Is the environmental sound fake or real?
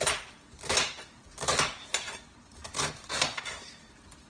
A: real